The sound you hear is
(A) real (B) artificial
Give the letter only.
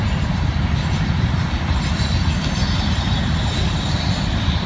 A